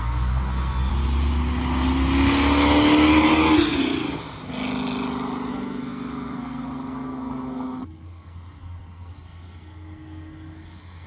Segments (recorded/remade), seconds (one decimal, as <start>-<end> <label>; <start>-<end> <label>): 0.0-0.9 remade; 0.9-5.5 recorded; 5.5-11.1 remade